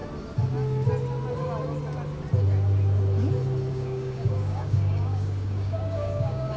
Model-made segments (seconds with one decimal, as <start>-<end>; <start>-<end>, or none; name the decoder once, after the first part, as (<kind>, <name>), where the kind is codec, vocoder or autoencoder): 3.7-6.6 (codec, DAC)